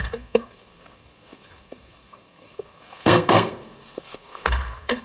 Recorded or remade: remade